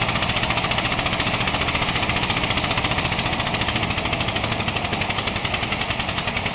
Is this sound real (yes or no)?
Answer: yes